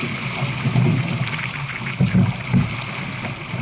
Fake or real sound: real